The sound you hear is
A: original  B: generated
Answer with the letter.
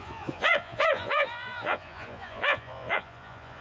B